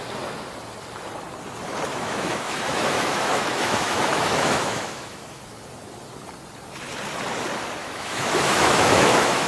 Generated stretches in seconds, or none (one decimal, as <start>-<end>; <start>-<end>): 1.9-5.4; 7.8-9.5

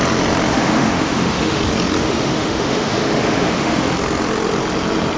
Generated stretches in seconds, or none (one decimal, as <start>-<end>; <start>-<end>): 0.5-1.6; 2.0-3.9

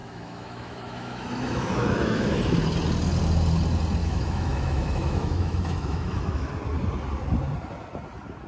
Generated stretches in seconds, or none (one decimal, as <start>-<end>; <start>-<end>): 0.0-2.4; 4.0-6.5

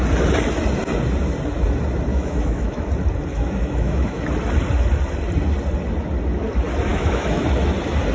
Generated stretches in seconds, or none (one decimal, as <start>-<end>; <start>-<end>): 2.1-2.9; 3.3-4.2; 6.9-7.4

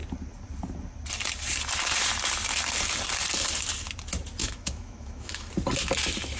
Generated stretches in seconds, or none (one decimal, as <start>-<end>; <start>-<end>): 4.4-5.5